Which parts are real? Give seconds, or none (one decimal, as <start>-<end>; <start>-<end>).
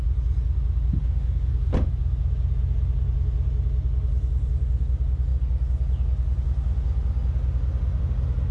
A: 0.0-1.0; 1.5-8.5